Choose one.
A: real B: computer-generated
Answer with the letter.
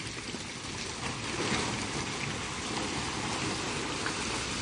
A